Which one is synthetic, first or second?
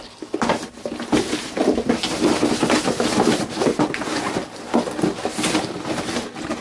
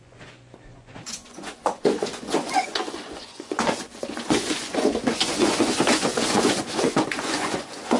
second